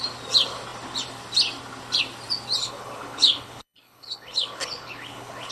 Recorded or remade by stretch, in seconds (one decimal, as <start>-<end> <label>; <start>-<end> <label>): 0.0-2.6 recorded; 2.6-5.5 remade

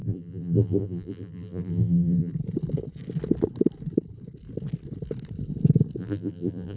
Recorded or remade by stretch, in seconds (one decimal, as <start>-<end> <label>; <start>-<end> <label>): 0.0-2.3 remade; 2.3-6.0 recorded; 6.0-6.8 remade

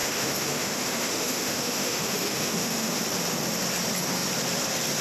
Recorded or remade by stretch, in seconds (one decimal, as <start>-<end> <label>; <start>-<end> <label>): 0.0-3.0 remade; 3.0-5.0 recorded

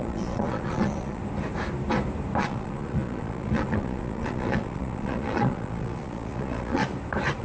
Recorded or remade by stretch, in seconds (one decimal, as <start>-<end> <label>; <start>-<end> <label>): 0.0-1.2 remade; 1.2-2.4 recorded; 2.4-6.8 remade; 6.8-7.4 recorded

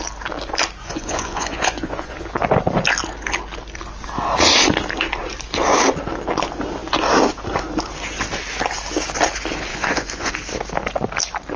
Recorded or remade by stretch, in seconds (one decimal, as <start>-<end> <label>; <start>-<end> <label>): 0.0-0.8 recorded; 0.8-2.4 remade; 2.4-9.7 recorded; 9.7-10.3 remade; 10.3-11.6 recorded

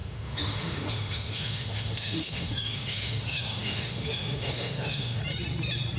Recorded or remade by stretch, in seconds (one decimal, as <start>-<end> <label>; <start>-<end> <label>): 0.0-5.2 remade; 5.2-6.0 recorded

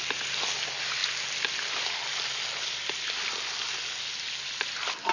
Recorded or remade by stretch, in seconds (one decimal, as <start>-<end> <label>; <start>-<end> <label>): 0.0-5.1 recorded

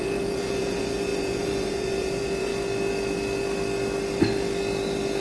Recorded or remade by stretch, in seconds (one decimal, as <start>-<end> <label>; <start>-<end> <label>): 0.0-2.5 remade; 2.5-5.2 recorded